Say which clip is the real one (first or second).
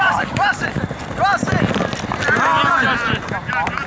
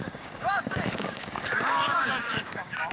first